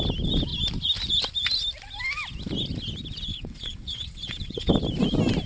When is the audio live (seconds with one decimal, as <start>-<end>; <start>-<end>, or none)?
0.0-3.3; 4.7-5.5